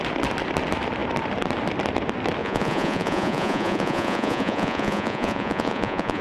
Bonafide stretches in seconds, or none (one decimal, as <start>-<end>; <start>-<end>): 0.0-2.4